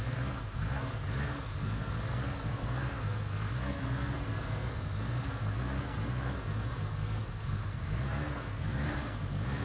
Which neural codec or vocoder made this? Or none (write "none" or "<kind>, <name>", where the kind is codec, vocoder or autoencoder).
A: codec, SNAC